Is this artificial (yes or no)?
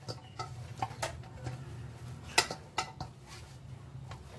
no